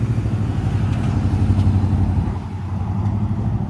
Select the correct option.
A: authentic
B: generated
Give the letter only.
A